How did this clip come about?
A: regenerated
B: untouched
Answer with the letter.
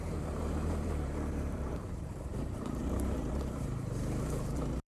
A